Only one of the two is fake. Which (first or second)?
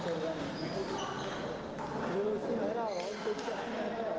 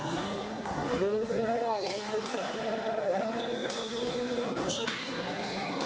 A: second